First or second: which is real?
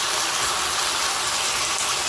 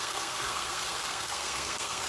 first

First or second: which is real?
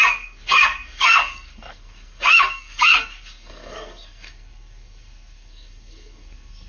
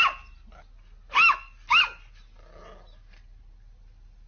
second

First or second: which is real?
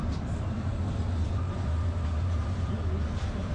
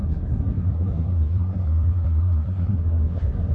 first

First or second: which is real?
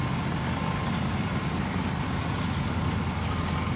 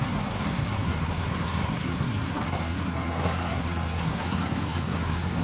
first